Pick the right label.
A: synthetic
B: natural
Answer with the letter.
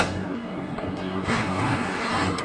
A